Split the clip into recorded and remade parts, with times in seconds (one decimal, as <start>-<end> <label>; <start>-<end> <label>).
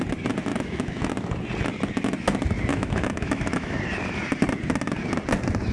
0.0-0.5 recorded; 0.5-1.1 remade; 1.1-2.7 recorded; 2.7-3.8 remade; 3.8-5.7 recorded